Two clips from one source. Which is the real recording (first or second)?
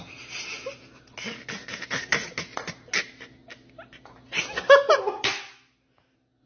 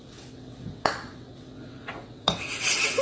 first